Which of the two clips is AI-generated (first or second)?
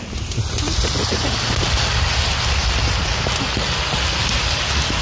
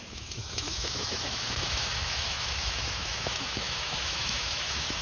second